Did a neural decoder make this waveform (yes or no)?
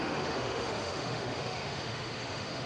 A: yes